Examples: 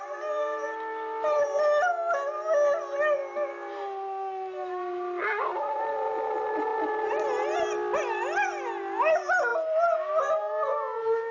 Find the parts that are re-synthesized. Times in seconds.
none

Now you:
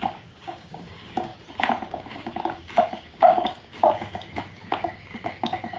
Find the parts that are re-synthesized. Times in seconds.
0.0-1.3 (codec, DAC); 1.9-5.8

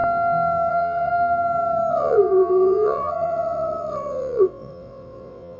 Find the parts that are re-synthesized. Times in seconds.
0.7-1.1 (vocoder, WaveNeXt); 1.9-5.6

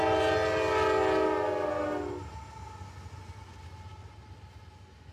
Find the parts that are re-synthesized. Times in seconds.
none

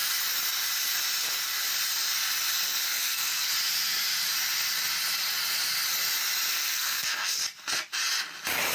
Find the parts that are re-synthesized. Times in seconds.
2.9-3.5 (codec, SNAC); 6.5-7.4